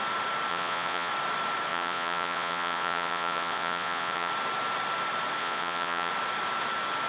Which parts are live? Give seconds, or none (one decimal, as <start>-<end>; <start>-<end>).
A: 0.0-0.5; 1.1-1.7; 4.3-5.4; 6.1-7.1